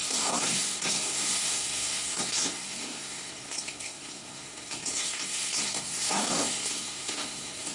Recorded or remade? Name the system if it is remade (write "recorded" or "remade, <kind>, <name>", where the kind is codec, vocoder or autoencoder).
remade, codec, SNAC